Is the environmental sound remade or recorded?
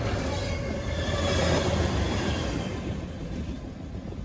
recorded